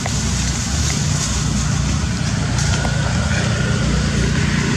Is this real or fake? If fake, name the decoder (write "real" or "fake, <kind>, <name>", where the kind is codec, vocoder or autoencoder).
real